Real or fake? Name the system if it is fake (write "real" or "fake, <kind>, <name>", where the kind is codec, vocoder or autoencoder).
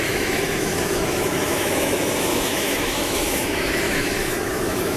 fake, autoencoder, DAC-VAE